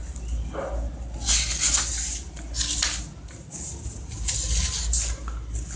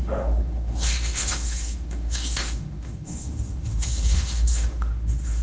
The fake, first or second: second